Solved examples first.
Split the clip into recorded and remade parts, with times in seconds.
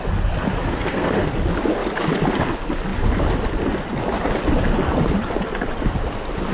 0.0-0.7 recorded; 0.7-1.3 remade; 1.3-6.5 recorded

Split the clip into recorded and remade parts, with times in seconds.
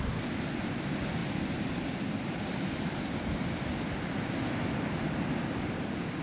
0.0-6.2 recorded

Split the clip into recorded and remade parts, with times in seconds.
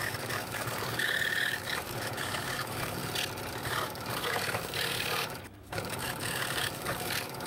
0.0-3.0 remade; 3.0-3.5 recorded; 3.5-7.5 remade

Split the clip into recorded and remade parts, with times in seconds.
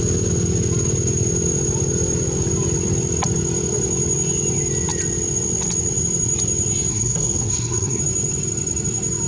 0.0-6.9 recorded; 6.9-8.0 remade; 8.0-9.3 recorded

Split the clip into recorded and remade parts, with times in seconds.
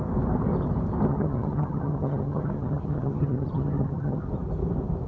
0.0-1.1 recorded; 1.1-4.2 remade; 4.2-5.1 recorded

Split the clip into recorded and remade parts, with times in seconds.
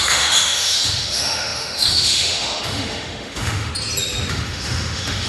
0.0-3.7 remade; 3.7-4.3 recorded; 4.3-5.3 remade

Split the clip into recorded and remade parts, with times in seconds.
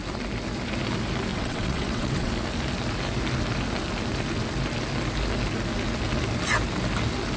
0.0-1.3 recorded; 1.3-2.3 remade; 2.3-7.4 recorded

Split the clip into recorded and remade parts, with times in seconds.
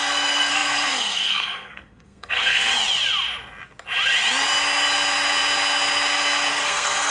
0.0-2.7 remade; 2.7-6.5 recorded; 6.5-7.1 remade